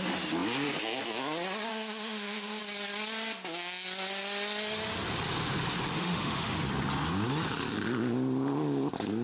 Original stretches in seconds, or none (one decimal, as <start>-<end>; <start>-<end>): 0.0-1.7; 2.6-5.9; 6.6-9.2